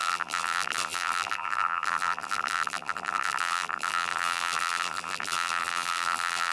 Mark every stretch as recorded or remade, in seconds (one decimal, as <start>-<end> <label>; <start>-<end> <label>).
0.0-6.5 remade